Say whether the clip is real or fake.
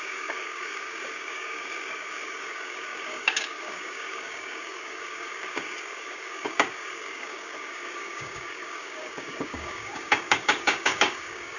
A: fake